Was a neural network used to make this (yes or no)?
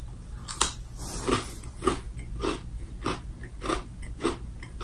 no